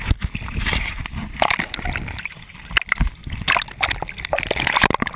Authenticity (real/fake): real